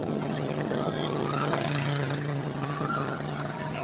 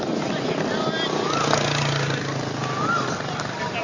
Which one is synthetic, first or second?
first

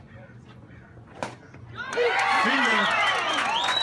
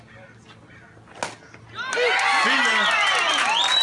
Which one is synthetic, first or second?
first